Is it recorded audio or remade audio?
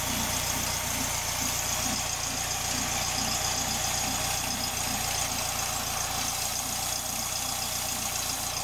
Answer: recorded